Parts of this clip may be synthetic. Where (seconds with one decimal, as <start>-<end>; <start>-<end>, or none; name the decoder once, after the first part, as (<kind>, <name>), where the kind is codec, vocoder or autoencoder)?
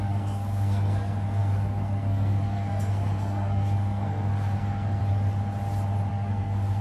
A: 0.0-5.0 (codec, SNAC); 6.1-6.8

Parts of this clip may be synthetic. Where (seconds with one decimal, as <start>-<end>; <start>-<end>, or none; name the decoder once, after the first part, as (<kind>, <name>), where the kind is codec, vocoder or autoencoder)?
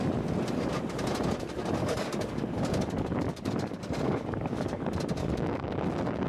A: 1.8-4.8 (codec, DAC); 5.2-6.3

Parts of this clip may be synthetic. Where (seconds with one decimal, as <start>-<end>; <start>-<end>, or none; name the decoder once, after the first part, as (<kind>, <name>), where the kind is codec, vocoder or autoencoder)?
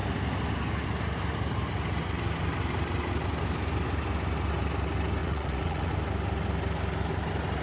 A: 5.2-5.9 (vocoder, Vocos)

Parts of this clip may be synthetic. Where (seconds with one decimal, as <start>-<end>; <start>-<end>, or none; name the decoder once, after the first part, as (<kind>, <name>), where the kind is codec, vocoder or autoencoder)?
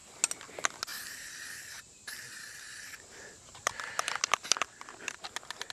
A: 0.9-3.7 (vocoder, BigVGAN v2)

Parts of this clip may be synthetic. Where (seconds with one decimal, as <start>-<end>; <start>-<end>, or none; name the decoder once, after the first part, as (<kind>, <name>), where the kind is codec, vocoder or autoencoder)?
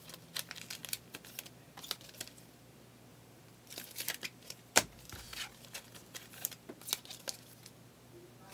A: 3.1-6.7 (vocoder, BigVGAN v2)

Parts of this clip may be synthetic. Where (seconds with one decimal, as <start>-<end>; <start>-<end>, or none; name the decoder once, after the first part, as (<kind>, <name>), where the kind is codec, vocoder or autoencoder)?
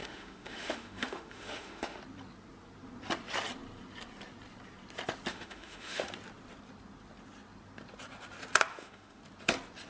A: 0.0-2.0 (autoencoder, DAC-VAE); 5.3-6.1; 8.7-9.2